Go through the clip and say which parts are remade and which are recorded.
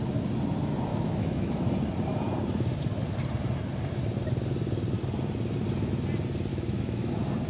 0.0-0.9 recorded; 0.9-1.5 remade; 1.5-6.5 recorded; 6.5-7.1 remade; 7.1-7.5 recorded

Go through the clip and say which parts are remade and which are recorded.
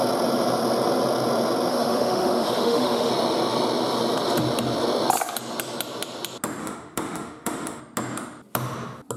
0.0-1.7 recorded; 1.7-3.1 remade; 3.1-6.6 recorded; 6.6-7.8 remade; 7.8-9.2 recorded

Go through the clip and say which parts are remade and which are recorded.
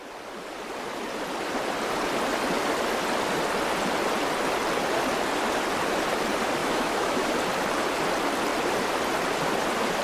0.0-6.6 recorded; 6.6-7.3 remade; 7.3-10.0 recorded